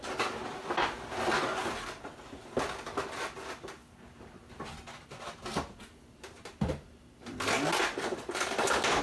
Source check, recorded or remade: recorded